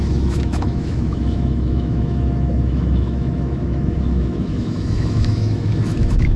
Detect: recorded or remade remade